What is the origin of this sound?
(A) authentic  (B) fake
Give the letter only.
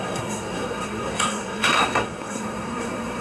B